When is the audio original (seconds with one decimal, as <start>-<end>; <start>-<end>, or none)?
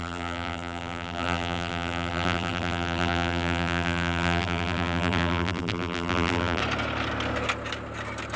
6.6-8.4